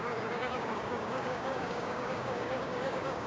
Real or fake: fake